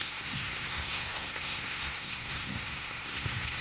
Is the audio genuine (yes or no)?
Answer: no